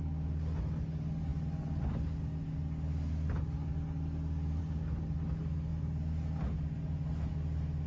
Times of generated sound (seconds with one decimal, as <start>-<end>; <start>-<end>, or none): none